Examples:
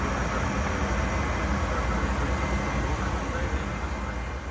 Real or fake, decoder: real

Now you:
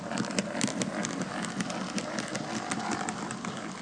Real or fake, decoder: real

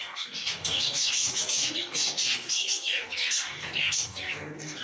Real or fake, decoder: fake, codec, DAC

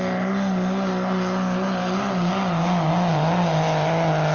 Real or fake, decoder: real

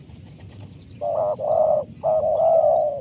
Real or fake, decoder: real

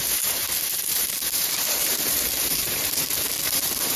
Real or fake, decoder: fake, vocoder, BigVGAN v2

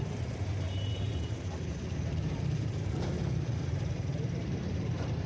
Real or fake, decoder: fake, vocoder, BigVGAN v2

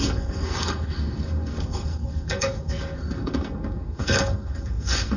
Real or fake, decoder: fake, codec, SNAC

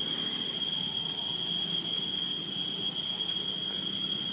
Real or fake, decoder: real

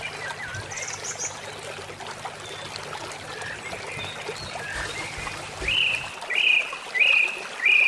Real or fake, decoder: real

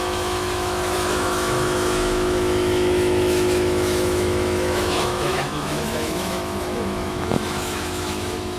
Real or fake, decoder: fake, autoencoder, DAC-VAE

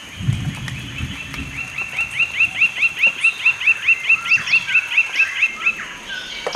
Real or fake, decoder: real